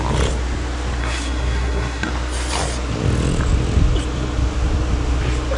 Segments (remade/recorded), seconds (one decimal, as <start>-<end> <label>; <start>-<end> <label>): 0.0-1.0 recorded; 1.0-2.1 remade; 2.1-5.6 recorded